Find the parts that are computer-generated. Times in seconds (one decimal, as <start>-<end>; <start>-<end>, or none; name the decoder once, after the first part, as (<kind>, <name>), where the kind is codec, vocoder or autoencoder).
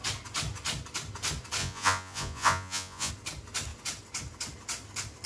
1.6-3.1 (vocoder, Vocos)